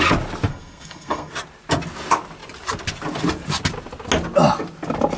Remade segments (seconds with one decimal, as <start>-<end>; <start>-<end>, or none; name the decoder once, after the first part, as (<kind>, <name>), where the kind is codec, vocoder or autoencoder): 0.5-1.3 (codec, SNAC)